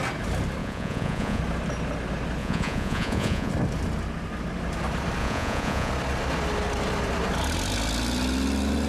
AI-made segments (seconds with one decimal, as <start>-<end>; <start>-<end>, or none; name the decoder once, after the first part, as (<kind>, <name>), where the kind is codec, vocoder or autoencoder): 0.6-1.4 (vocoder, Vocos); 2.4-3.5; 5.2-5.9